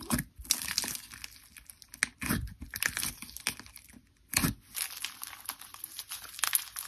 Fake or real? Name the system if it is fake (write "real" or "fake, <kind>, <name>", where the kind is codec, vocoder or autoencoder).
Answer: real